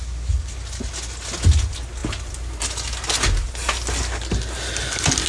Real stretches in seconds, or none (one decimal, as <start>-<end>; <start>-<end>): 0.0-5.3